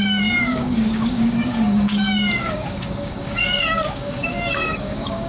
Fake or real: fake